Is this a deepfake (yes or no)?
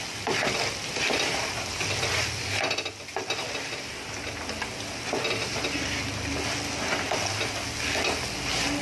no